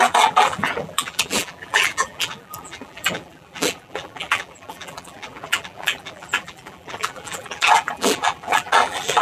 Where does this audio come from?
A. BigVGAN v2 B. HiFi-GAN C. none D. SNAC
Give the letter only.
A